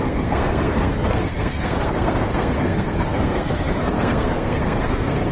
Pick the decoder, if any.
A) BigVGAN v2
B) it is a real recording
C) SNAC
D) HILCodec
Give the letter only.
C